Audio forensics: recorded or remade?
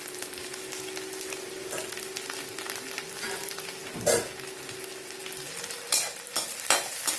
recorded